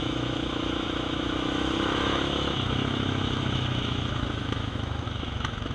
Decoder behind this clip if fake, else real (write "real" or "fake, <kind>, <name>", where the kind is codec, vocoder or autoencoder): fake, autoencoder, DAC-VAE